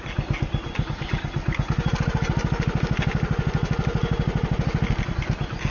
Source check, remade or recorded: recorded